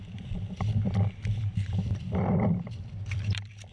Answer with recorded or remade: remade